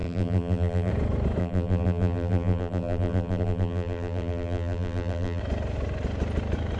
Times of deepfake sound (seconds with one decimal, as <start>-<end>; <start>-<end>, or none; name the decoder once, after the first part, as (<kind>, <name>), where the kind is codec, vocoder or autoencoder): 0.0-0.9 (vocoder, BigVGAN v2); 1.4-5.4

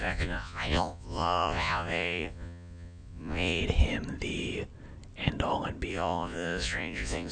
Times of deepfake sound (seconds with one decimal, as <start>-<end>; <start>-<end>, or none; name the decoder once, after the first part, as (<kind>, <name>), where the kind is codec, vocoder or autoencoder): 0.0-3.6 (vocoder, Vocos); 5.9-7.3

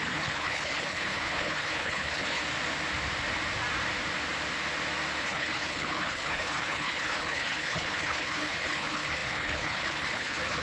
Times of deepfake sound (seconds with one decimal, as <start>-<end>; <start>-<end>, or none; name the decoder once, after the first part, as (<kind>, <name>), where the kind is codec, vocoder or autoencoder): 0.0-2.4 (codec, HILCodec); 5.2-10.6

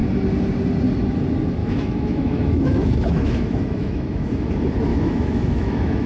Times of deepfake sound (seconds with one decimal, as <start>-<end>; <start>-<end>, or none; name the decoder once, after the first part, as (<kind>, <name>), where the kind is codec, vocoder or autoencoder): 1.6-4.5 (autoencoder, DAC-VAE); 4.9-6.1